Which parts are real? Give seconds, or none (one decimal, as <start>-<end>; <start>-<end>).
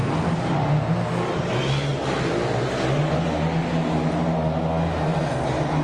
0.0-5.8